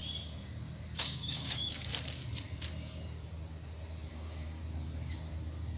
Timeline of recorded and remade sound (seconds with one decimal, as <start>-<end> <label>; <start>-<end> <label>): 0.0-1.0 recorded; 1.0-1.9 remade; 1.9-4.1 recorded; 4.1-4.6 remade; 4.6-5.8 recorded